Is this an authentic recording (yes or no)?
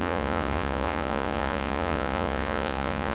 no